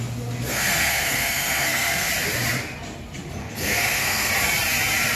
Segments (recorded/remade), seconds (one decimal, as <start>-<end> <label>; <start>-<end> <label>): 0.0-0.5 recorded; 0.5-2.1 remade; 2.1-3.4 recorded; 3.4-4.3 remade; 4.3-5.2 recorded